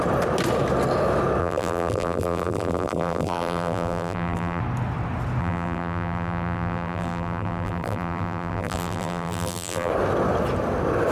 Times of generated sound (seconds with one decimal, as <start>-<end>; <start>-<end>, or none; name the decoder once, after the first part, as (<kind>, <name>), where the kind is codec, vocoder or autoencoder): 1.4-4.6 (vocoder, BigVGAN v2); 5.4-9.9